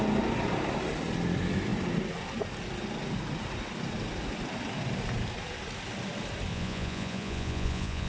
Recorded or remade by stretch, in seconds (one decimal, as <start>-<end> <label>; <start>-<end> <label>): 0.0-6.5 recorded; 6.5-8.1 remade